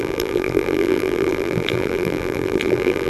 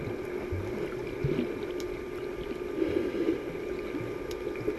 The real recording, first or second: second